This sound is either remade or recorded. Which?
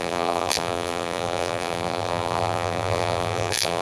remade